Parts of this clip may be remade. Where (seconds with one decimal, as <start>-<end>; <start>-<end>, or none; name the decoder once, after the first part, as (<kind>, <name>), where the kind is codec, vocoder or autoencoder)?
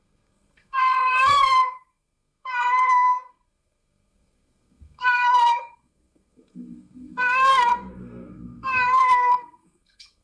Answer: 0.0-10.2 (codec, SNAC)